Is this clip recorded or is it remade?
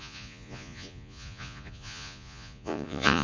remade